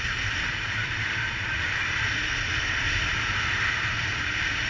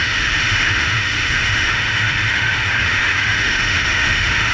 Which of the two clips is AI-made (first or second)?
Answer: second